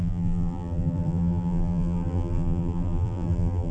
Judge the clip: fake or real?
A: fake